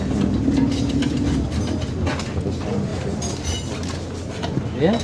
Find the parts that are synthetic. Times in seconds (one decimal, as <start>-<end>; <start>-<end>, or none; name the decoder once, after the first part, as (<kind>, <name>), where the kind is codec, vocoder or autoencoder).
none